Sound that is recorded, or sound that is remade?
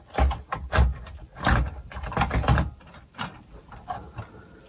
recorded